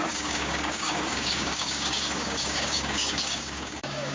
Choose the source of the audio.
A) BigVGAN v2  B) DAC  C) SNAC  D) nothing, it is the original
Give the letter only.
B